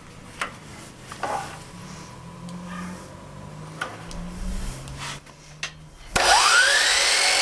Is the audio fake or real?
real